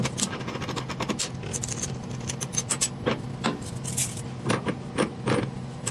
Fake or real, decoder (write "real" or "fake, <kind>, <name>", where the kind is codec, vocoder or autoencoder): real